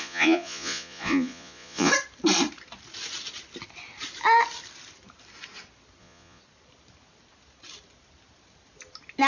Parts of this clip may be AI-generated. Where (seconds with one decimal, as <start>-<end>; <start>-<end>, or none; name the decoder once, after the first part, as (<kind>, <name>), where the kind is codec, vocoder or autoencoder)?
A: 0.0-1.9 (vocoder, Vocos); 6.0-6.4